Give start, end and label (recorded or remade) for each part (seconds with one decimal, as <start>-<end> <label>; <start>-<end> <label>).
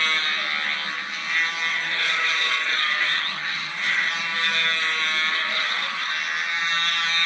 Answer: 0.0-1.7 recorded; 1.7-4.1 remade; 4.1-5.3 recorded; 5.3-6.1 remade; 6.1-7.3 recorded